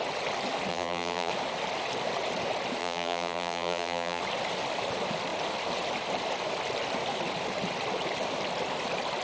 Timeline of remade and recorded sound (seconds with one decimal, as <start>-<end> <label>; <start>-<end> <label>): 0.0-0.7 recorded; 0.7-1.3 remade; 1.3-2.8 recorded; 2.8-4.2 remade; 4.2-9.2 recorded